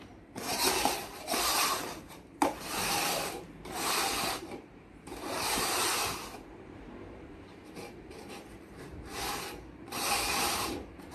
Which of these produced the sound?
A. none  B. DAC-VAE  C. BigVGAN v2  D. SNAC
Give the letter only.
C